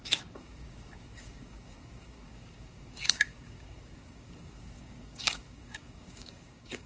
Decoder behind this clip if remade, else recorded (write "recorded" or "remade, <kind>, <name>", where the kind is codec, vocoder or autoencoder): remade, codec, DAC